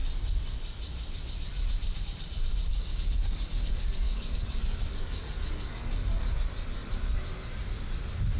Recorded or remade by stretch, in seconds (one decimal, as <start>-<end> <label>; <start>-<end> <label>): 0.0-2.7 recorded; 2.7-6.3 remade; 6.3-8.4 recorded